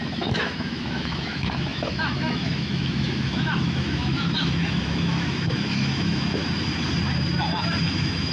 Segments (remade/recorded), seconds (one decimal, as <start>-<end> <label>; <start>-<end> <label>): 0.0-6.4 remade; 6.4-7.8 recorded; 7.8-8.3 remade